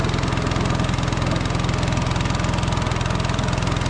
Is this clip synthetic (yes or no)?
no